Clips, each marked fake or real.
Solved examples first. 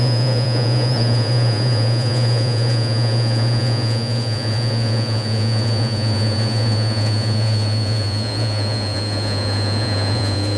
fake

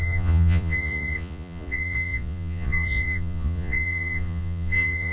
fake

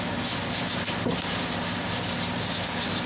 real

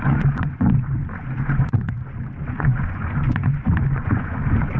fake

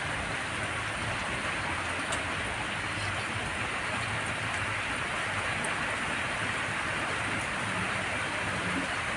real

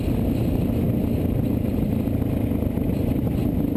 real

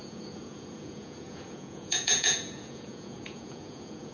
fake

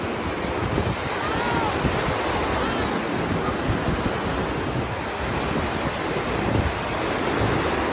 real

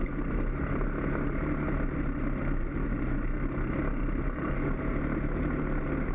real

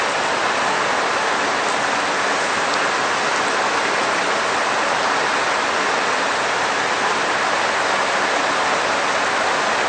real